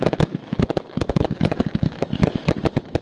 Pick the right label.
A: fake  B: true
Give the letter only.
A